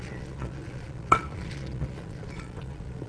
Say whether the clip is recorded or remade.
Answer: remade